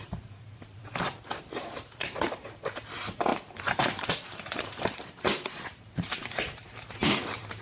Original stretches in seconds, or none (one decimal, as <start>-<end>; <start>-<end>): none

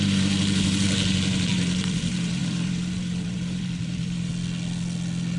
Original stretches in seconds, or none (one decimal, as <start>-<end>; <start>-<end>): 4.3-5.4